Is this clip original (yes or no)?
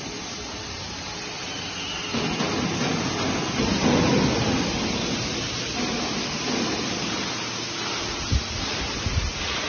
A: yes